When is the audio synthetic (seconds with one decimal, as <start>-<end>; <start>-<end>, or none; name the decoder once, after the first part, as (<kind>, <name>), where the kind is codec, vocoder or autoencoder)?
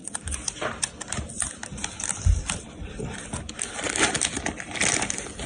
none